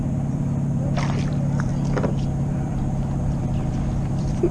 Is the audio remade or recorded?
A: remade